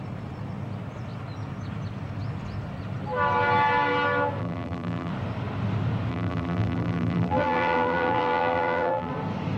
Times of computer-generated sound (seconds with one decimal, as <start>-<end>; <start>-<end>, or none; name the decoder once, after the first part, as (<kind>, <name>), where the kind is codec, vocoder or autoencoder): 4.4-5.1 (vocoder, BigVGAN v2); 6.1-9.1